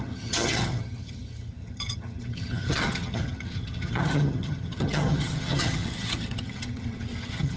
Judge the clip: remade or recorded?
remade